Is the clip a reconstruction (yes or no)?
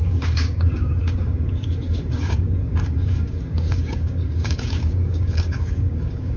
yes